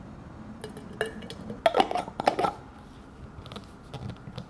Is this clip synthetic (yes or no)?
no